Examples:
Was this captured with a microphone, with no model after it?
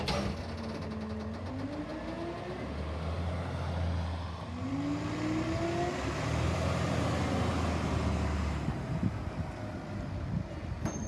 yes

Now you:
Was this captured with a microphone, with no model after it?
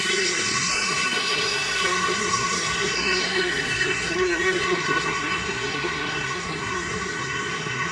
no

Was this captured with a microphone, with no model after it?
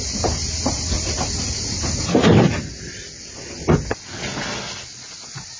yes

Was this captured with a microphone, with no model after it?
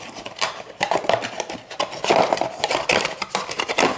no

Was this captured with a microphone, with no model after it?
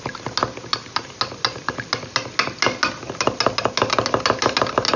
yes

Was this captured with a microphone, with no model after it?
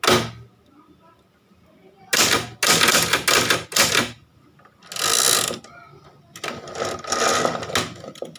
yes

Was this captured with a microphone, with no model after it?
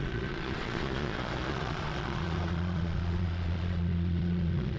no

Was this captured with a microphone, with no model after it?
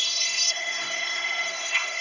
no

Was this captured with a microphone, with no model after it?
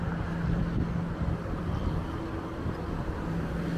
yes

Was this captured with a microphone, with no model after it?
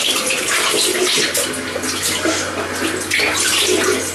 yes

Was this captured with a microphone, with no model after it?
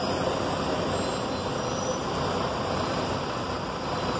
yes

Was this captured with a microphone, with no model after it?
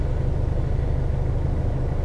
yes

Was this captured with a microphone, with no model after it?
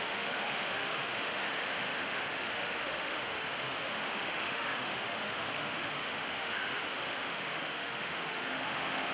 no